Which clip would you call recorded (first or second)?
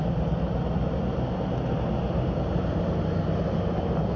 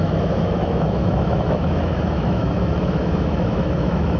first